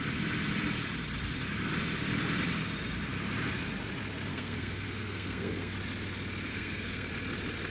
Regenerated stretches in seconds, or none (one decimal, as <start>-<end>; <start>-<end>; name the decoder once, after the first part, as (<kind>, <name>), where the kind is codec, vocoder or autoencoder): 4.3-5.7 (codec, SNAC); 6.5-7.1